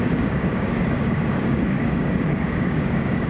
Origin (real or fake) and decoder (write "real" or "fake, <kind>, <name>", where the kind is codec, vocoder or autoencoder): fake, codec, DAC